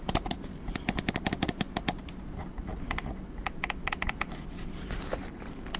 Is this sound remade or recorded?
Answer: recorded